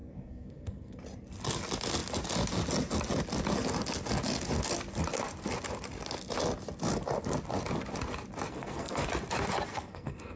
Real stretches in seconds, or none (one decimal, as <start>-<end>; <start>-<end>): 1.0-8.5; 9.1-9.7